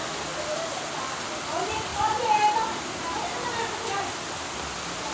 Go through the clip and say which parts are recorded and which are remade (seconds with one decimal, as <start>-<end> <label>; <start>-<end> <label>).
0.0-5.1 recorded